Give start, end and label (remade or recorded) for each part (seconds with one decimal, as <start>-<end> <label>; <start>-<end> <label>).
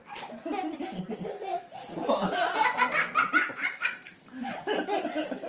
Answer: 0.0-1.5 recorded; 1.5-4.8 remade; 4.8-5.5 recorded